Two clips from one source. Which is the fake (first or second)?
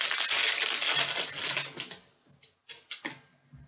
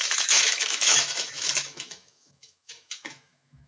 second